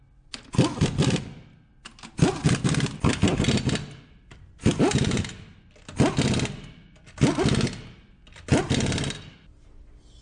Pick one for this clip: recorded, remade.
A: recorded